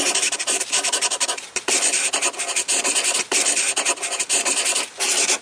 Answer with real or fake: fake